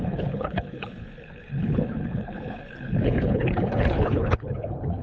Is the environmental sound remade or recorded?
remade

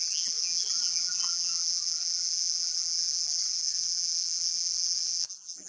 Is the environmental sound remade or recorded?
remade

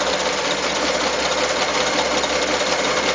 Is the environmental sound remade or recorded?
recorded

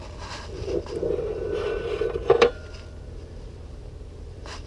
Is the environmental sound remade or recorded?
remade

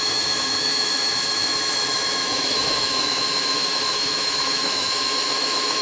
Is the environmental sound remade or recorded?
remade